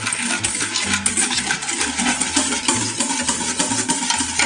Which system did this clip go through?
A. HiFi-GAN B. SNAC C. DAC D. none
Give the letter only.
D